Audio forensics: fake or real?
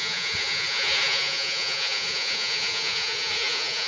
fake